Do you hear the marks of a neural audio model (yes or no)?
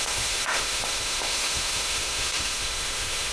yes